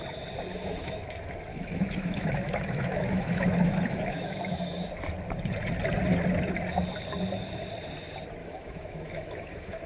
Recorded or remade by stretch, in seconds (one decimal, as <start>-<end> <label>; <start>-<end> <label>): 0.0-0.5 recorded; 0.5-1.1 remade; 1.1-1.5 recorded; 1.5-4.9 remade; 4.9-8.4 recorded; 8.4-9.9 remade